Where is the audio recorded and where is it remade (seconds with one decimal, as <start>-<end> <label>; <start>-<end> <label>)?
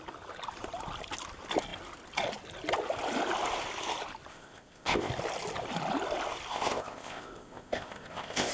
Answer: 0.0-4.3 recorded; 4.3-5.1 remade; 5.1-6.5 recorded; 6.5-8.5 remade